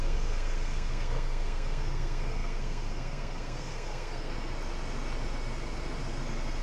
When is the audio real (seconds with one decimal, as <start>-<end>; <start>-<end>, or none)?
4.3-6.6